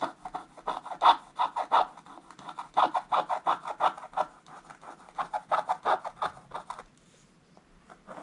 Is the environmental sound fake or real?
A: real